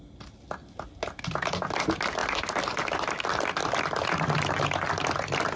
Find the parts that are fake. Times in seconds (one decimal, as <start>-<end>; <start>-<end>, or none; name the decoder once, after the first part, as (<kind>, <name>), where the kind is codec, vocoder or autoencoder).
none